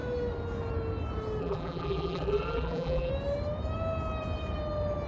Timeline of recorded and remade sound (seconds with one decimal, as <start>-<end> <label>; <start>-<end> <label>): 0.0-1.4 recorded; 1.4-3.1 remade; 3.1-5.1 recorded

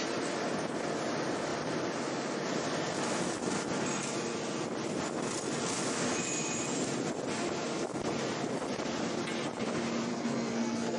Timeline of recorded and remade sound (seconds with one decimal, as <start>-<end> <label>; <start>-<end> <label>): 0.0-10.1 recorded; 10.1-11.0 remade

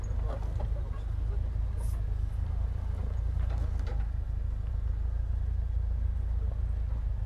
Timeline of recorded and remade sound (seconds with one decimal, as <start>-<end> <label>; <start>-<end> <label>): 0.0-7.3 recorded

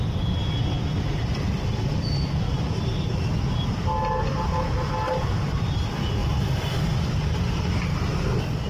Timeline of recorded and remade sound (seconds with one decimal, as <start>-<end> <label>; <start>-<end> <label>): 0.0-0.4 recorded; 0.4-2.8 remade; 2.8-6.2 recorded; 6.2-7.3 remade; 7.3-8.7 recorded